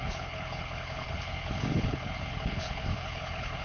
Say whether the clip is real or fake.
fake